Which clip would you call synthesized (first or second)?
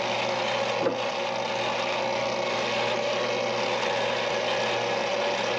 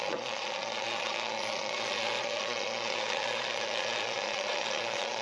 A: second